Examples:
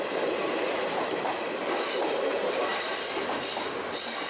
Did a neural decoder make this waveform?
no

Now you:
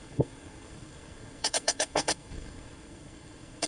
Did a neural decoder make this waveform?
yes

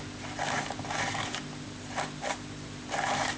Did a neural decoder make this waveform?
no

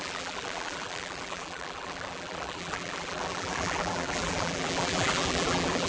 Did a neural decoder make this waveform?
yes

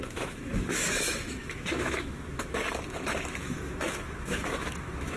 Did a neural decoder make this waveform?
yes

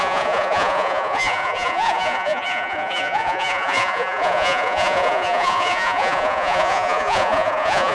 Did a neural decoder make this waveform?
yes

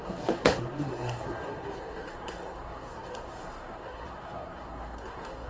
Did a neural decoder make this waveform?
yes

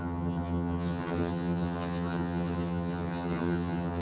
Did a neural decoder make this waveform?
yes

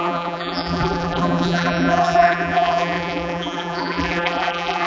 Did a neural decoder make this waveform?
yes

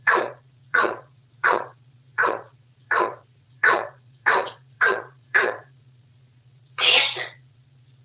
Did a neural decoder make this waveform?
yes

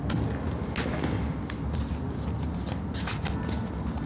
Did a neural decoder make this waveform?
no